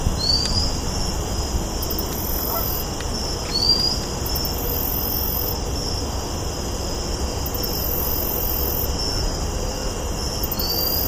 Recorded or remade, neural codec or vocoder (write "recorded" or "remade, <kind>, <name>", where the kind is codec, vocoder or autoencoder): recorded